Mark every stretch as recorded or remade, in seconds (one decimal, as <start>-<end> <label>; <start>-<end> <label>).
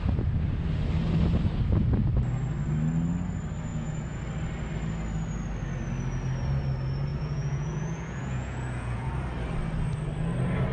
0.0-3.7 recorded; 3.7-4.2 remade; 4.2-7.1 recorded; 7.1-9.1 remade; 9.1-10.7 recorded